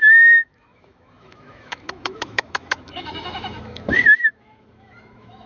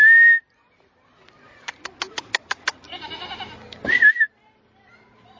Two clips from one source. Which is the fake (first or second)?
first